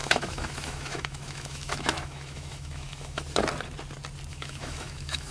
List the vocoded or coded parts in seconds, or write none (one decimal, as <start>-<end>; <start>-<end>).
0.0-3.2; 4.3-5.3